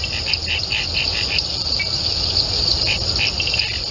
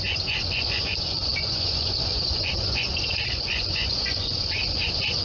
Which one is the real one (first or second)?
first